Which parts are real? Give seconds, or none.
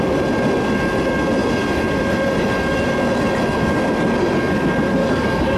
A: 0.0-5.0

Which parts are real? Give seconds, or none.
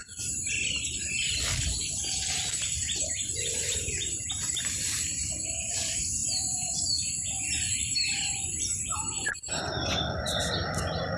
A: 0.0-2.5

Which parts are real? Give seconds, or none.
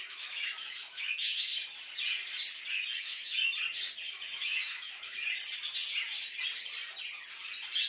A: 1.5-2.7; 3.5-4.2; 5.2-7.9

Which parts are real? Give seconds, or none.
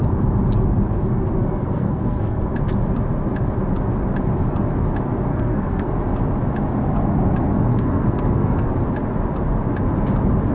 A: 0.0-1.3; 2.4-5.3; 5.9-7.7; 8.7-10.5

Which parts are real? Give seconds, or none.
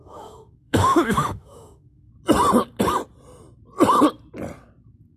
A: 2.1-5.2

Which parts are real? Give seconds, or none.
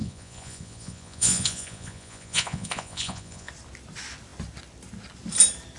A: 3.5-5.8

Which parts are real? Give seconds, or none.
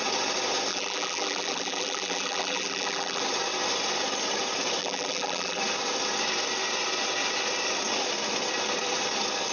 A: 0.0-0.7; 3.2-4.8; 5.6-9.5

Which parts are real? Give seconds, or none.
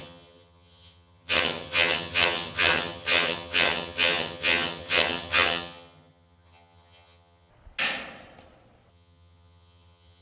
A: 7.5-8.9